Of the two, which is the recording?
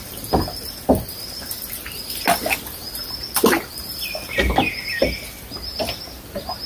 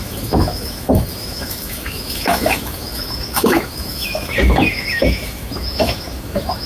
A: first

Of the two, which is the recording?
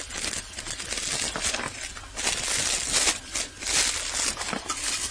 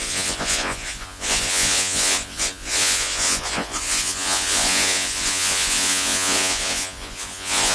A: first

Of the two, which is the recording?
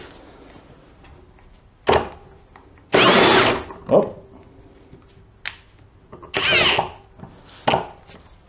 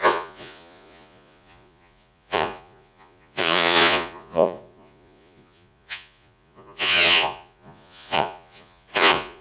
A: first